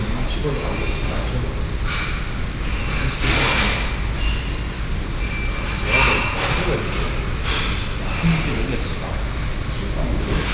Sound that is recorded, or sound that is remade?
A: recorded